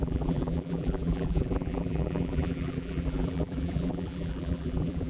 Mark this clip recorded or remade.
remade